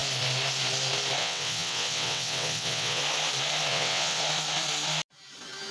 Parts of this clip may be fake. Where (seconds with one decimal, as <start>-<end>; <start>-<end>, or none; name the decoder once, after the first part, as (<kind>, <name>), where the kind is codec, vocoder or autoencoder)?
1.2-3.0 (vocoder, WaveNeXt); 3.7-4.2